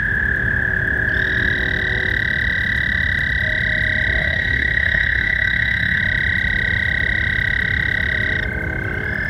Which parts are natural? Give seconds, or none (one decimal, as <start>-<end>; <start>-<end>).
0.0-4.2; 6.0-9.3